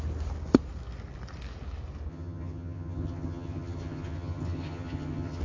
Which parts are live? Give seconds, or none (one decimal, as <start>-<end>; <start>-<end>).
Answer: 0.0-2.1